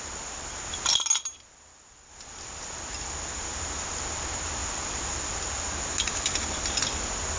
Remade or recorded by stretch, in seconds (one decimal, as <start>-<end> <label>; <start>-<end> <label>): 0.0-7.4 recorded